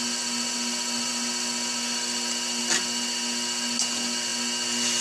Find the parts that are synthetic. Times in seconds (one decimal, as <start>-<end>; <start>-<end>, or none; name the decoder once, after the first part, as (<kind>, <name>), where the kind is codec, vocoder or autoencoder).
none